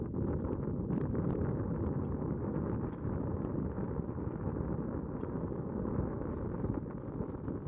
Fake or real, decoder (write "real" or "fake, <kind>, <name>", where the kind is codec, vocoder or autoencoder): real